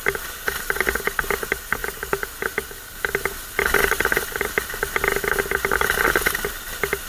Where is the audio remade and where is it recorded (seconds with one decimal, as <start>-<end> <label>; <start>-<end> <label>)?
0.0-7.1 recorded